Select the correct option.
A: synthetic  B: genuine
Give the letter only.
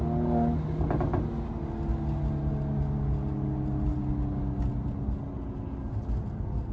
B